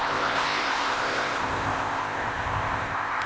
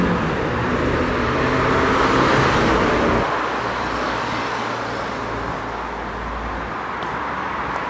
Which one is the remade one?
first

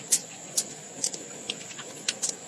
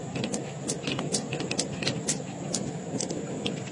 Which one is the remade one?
first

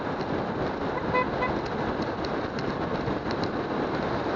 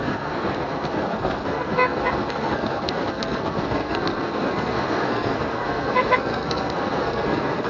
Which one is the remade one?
second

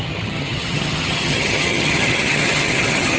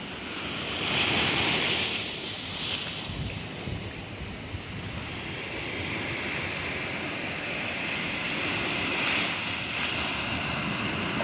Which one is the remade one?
first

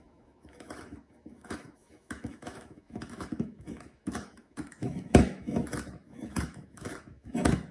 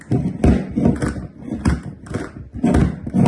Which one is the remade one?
first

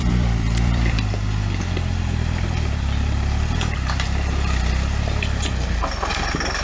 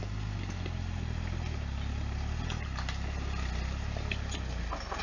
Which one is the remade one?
first